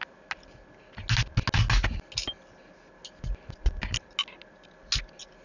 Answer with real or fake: real